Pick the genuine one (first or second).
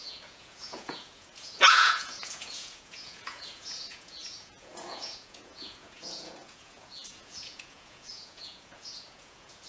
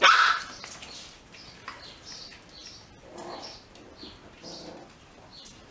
second